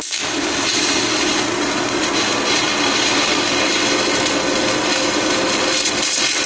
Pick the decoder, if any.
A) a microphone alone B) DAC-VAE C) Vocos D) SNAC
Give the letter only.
A